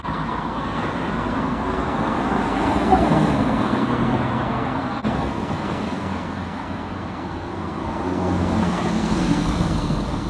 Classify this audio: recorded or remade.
remade